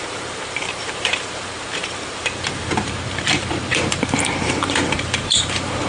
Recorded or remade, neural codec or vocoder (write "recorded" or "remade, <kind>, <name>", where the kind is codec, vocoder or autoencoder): remade, vocoder, BigVGAN v2